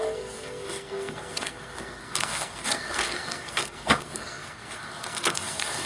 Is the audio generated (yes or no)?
yes